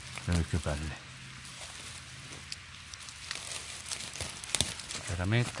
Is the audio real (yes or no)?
yes